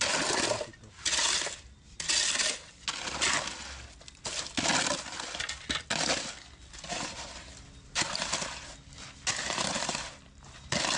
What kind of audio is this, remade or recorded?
recorded